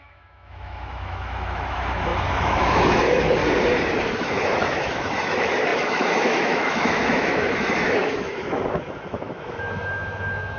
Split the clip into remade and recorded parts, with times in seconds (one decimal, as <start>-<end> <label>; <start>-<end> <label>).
0.0-3.4 remade; 3.4-4.3 recorded; 4.3-10.6 remade

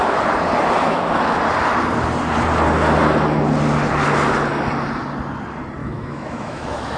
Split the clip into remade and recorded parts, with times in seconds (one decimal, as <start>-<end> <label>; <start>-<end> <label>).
0.0-0.8 recorded; 0.8-1.4 remade; 1.4-5.8 recorded; 5.8-7.0 remade

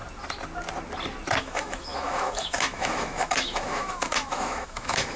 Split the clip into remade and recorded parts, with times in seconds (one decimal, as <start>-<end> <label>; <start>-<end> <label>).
0.0-1.4 recorded; 1.4-5.2 remade

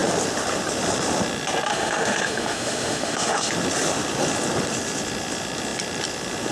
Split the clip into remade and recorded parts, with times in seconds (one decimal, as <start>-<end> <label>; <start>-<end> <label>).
0.0-1.7 recorded; 1.7-3.5 remade; 3.5-6.5 recorded

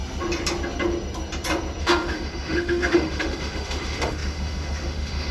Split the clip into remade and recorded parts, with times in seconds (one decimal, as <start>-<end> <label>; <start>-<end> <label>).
0.0-1.8 recorded; 1.8-5.3 remade

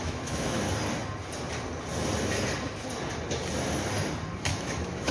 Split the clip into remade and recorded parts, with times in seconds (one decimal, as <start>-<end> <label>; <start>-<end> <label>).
0.0-0.6 remade; 0.6-4.5 recorded; 4.5-5.1 remade

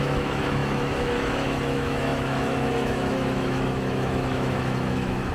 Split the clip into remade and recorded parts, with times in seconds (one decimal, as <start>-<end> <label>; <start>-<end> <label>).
0.0-5.3 remade